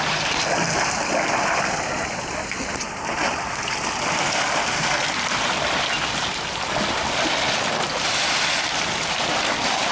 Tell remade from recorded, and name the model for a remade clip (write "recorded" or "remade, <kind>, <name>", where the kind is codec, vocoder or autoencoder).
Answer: recorded